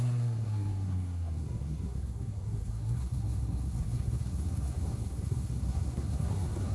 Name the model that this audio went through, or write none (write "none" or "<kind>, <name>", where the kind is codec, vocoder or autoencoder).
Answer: codec, SNAC